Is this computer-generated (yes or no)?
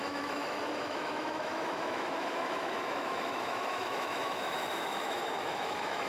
yes